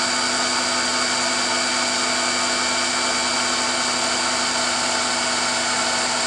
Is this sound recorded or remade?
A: recorded